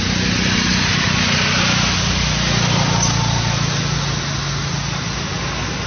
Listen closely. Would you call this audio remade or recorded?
recorded